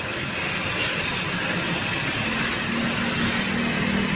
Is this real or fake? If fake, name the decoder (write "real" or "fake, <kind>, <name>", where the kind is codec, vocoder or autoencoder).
real